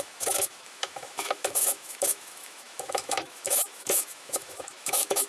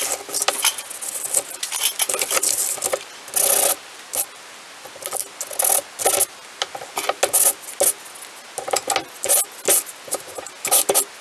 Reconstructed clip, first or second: first